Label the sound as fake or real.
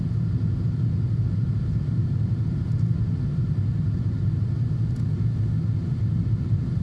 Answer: real